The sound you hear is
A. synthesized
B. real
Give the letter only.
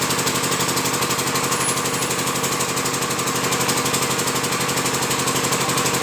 B